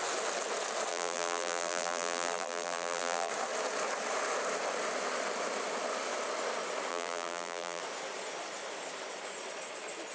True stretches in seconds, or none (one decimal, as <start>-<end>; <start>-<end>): 0.0-0.9; 3.3-6.9; 7.8-10.1